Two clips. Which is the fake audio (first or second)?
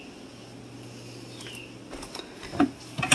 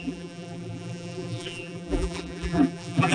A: second